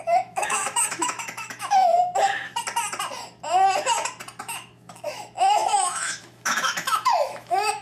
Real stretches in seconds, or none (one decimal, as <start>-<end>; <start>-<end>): 2.5-4.4